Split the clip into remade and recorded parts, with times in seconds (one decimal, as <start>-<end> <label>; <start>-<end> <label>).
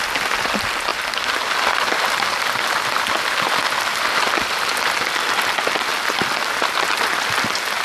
0.0-7.8 recorded